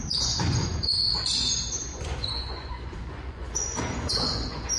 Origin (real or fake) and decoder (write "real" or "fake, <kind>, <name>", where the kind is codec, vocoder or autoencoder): fake, vocoder, Vocos